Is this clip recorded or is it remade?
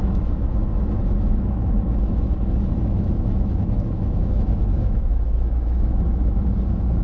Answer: remade